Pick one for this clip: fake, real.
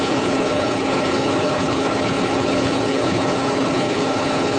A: fake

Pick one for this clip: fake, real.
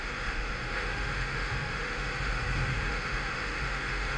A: fake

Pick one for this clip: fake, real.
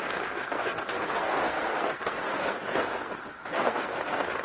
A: fake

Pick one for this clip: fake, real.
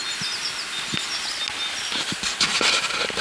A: real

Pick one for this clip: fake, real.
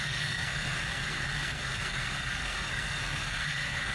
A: fake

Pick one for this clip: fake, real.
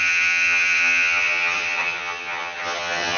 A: fake